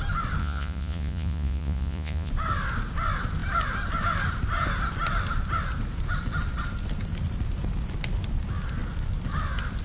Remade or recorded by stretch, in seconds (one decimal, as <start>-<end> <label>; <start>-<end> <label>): 0.0-0.4 recorded; 0.4-2.3 remade; 2.3-9.8 recorded